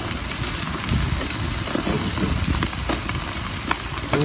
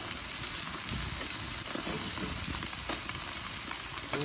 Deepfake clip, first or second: first